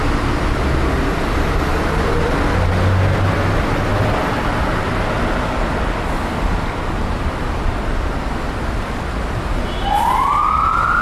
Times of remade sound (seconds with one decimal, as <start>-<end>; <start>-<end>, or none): 3.9-5.2

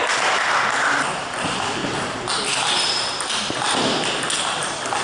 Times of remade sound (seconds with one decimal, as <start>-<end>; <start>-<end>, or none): 0.0-1.8

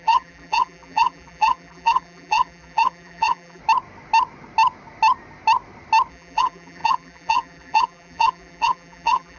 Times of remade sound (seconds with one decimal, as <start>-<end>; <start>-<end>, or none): 0.0-3.6; 6.1-9.4